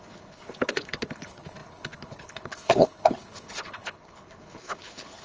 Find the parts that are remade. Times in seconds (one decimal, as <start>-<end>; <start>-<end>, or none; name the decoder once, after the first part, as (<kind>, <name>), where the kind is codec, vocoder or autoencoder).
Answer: 0.0-5.2 (codec, HILCodec)